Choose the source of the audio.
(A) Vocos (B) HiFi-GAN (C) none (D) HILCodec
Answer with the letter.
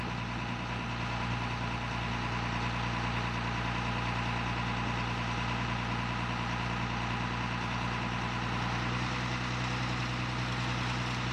C